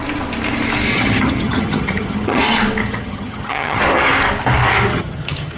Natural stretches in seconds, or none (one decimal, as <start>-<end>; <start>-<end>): 0.0-0.9; 2.4-2.8; 3.8-4.9